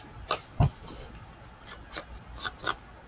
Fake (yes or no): no